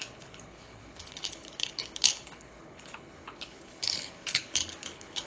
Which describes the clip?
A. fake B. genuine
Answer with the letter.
A